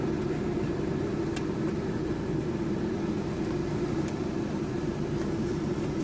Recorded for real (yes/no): yes